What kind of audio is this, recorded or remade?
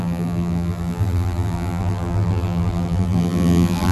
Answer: remade